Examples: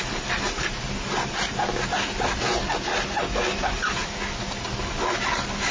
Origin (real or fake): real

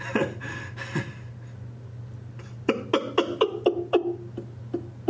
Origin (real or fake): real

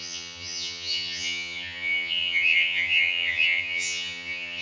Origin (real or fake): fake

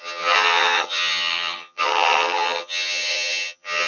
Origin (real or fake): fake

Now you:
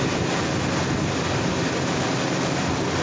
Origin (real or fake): real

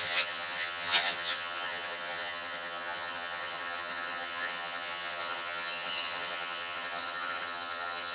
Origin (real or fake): fake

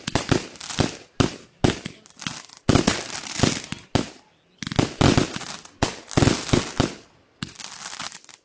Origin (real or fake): real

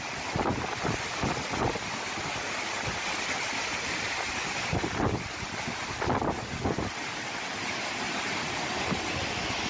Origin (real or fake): real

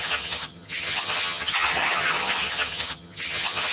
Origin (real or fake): fake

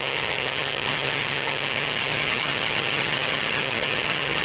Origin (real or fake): fake